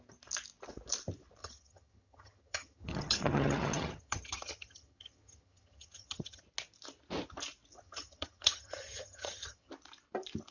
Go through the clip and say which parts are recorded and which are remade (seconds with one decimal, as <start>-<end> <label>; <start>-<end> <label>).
0.0-1.4 recorded; 1.4-6.4 remade; 6.4-7.7 recorded; 7.7-9.7 remade; 9.7-10.5 recorded